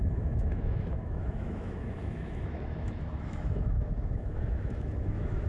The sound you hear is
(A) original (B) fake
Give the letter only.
B